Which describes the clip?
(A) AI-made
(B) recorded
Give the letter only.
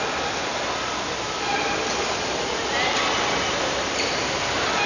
B